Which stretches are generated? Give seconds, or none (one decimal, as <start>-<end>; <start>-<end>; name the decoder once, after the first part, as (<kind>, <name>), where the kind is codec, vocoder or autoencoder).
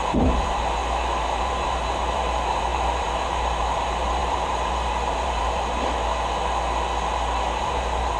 0.0-0.8 (vocoder, BigVGAN v2); 1.4-6.0; 7.6-8.2